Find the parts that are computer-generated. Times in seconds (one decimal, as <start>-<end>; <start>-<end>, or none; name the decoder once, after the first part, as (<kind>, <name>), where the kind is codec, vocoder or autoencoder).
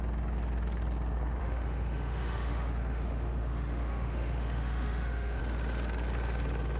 1.4-5.4 (autoencoder, DAC-VAE)